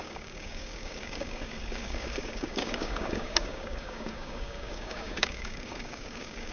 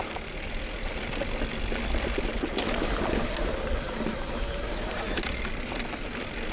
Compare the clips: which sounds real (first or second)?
second